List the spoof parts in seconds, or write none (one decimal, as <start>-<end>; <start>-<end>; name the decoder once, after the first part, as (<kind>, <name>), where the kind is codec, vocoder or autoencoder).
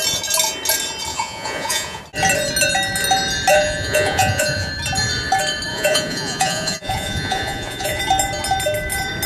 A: 1.1-2.0 (vocoder, Vocos); 3.5-4.7; 5.7-8.0